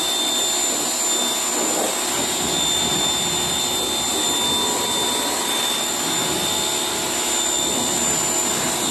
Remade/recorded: recorded